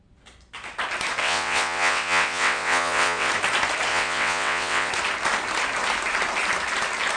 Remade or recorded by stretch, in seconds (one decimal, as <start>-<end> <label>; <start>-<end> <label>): 0.0-1.2 recorded; 1.2-3.3 remade; 3.3-3.9 recorded; 3.9-4.9 remade; 4.9-7.2 recorded